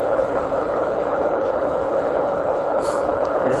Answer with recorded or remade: remade